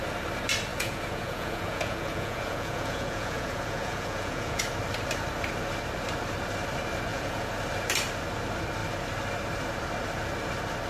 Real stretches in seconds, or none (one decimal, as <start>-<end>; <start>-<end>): 0.0-0.7; 4.6-7.1; 7.6-10.9